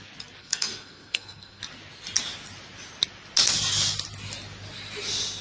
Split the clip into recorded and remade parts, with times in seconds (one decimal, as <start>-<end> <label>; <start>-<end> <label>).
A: 0.0-0.4 recorded; 0.4-1.6 remade; 1.6-5.4 recorded